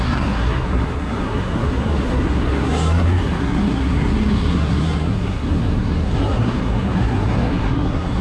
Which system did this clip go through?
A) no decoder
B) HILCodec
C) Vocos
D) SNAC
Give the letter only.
D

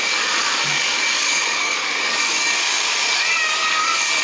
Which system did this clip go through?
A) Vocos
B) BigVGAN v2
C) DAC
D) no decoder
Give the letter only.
C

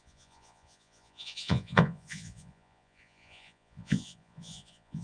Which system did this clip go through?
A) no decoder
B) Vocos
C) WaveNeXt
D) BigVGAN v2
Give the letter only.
B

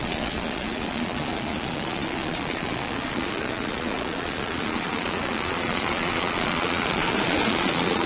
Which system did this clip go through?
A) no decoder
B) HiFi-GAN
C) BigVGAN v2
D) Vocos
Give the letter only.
D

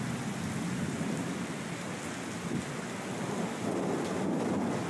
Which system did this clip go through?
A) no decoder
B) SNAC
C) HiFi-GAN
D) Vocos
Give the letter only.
A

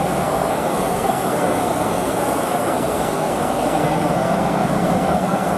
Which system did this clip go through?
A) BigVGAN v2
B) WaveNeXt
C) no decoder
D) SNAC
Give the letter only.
D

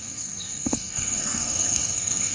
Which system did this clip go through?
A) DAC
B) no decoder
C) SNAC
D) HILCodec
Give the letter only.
C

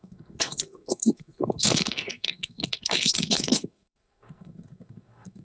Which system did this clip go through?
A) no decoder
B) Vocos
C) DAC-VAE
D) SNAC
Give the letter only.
D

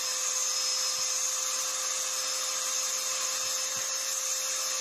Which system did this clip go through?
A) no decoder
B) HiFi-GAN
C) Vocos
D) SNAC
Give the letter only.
A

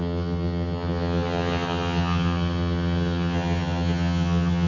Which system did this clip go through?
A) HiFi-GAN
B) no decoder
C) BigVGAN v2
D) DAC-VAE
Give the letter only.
A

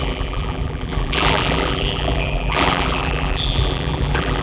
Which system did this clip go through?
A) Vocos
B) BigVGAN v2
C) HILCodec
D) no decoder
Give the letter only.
B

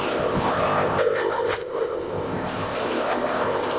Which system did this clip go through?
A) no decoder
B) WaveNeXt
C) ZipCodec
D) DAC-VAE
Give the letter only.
C